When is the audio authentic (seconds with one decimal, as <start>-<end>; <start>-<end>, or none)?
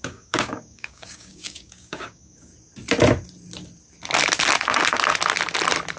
2.5-6.0